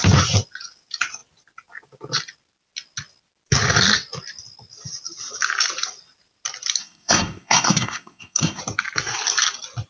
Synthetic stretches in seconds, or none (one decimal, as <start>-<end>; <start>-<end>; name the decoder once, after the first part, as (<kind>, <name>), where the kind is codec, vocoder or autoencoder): 6.8-8.6 (codec, SNAC)